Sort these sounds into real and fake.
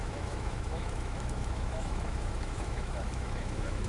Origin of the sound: fake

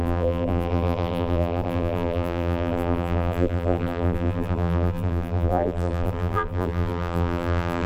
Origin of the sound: fake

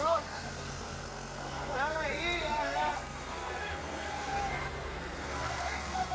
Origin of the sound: fake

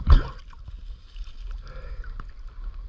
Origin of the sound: real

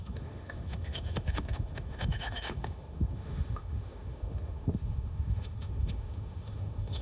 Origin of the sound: fake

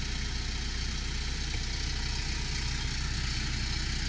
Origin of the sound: real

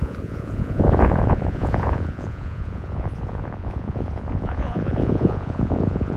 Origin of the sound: fake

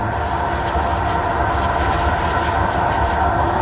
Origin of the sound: real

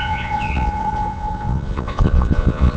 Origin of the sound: fake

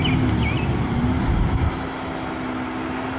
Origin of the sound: real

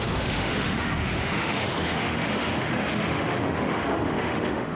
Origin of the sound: fake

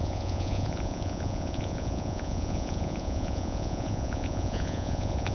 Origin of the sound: fake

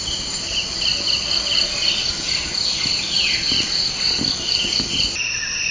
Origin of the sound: real